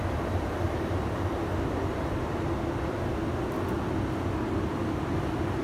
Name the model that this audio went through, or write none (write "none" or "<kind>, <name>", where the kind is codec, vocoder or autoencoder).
none